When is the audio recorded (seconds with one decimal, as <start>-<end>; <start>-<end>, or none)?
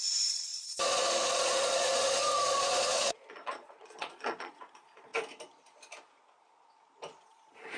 5.1-7.2